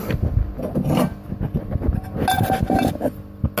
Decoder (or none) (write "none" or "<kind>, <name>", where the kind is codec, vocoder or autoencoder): none